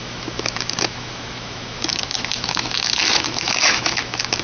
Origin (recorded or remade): remade